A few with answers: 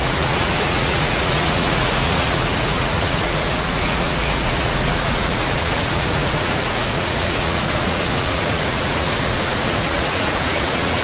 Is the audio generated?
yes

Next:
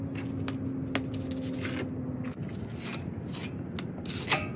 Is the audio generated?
no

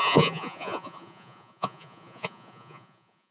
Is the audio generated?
yes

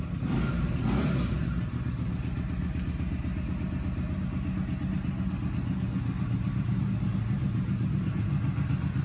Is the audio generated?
no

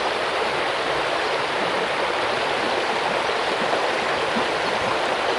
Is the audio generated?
no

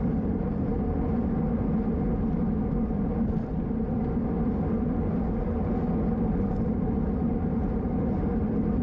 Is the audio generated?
no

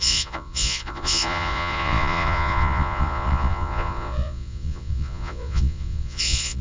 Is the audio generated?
yes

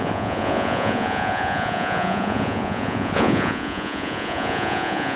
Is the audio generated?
yes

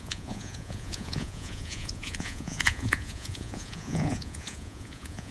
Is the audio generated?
yes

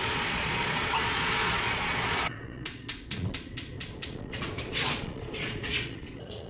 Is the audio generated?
yes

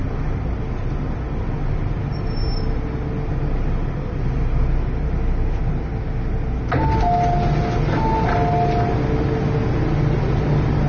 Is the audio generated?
no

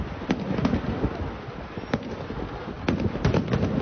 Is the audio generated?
no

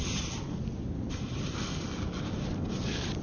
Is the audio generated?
no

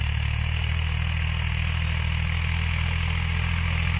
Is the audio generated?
no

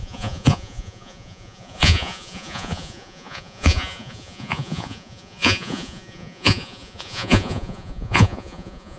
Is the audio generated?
yes